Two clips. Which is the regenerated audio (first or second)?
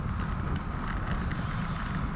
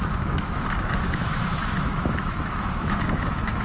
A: second